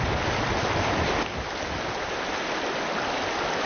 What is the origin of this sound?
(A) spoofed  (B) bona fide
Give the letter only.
B